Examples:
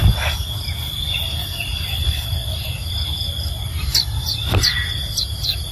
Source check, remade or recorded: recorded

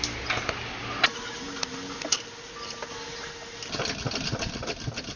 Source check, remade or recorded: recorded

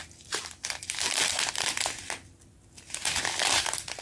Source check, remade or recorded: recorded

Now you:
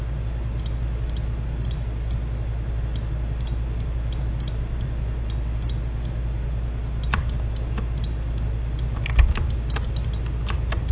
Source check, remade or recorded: recorded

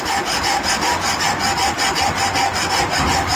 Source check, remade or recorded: recorded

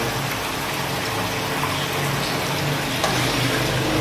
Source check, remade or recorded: recorded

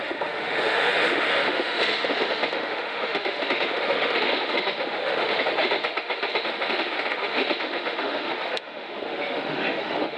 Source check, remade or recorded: remade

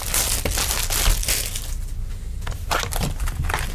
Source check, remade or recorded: recorded